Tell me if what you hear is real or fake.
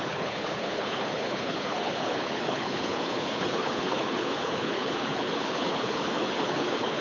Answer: fake